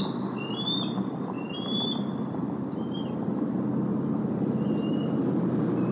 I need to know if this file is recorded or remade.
remade